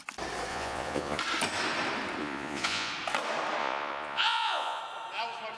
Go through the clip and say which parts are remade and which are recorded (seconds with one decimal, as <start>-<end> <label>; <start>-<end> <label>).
0.0-0.5 recorded; 0.5-1.2 remade; 1.2-2.2 recorded; 2.2-2.9 remade; 2.9-3.6 recorded; 3.6-4.8 remade; 4.8-5.6 recorded